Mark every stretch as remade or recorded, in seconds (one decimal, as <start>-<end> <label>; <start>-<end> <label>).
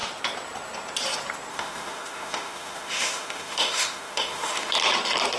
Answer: 0.0-1.5 recorded; 1.5-4.7 remade; 4.7-5.4 recorded